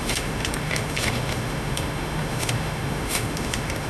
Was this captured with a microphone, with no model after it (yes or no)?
no